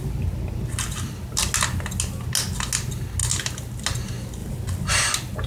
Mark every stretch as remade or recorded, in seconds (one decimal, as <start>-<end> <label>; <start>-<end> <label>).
0.0-5.5 recorded